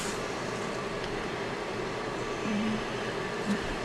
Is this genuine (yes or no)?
no